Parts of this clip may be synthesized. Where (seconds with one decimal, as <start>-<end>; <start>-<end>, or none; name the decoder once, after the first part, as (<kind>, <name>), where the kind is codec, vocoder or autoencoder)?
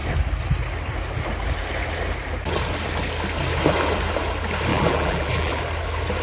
4.7-5.6 (vocoder, BigVGAN v2)